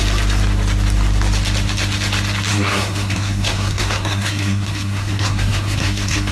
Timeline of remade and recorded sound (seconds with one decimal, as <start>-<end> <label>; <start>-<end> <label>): 0.0-2.5 recorded; 2.5-6.3 remade